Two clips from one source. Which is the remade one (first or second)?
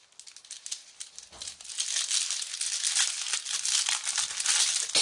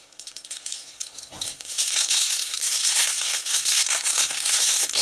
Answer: second